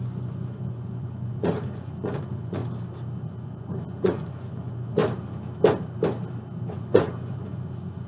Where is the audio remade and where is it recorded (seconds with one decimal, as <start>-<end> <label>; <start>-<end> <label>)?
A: 0.0-2.6 remade; 2.6-3.3 recorded; 3.3-5.0 remade; 5.0-6.7 recorded; 6.7-8.1 remade